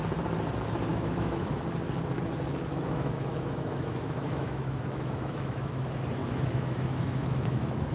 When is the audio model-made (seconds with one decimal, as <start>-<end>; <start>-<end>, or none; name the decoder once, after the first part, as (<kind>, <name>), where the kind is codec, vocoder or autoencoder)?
0.9-1.4 (autoencoder, DAC-VAE); 2.7-5.7; 6.2-7.9